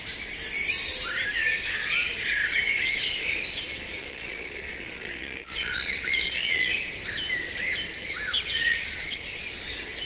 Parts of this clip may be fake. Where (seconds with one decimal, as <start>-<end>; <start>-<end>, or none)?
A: 4.0-6.7; 8.0-9.2